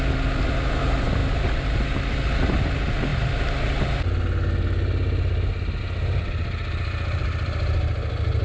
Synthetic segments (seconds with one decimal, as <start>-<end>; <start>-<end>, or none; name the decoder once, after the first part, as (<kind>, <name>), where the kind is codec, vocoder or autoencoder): none